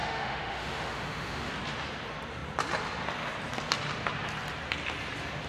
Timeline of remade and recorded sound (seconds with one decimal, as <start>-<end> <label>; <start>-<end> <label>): 0.0-1.5 remade; 1.5-5.5 recorded